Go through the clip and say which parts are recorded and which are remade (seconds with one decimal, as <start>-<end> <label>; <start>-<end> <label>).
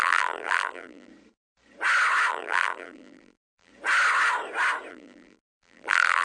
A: 0.0-1.1 remade; 1.1-2.3 recorded; 2.3-3.7 remade; 3.7-4.9 recorded; 4.9-6.2 remade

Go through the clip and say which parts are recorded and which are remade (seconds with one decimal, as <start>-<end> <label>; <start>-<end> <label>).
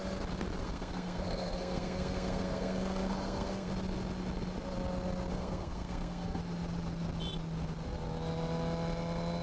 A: 0.0-0.6 recorded; 0.6-3.7 remade; 3.7-5.3 recorded; 5.3-6.4 remade; 6.4-9.4 recorded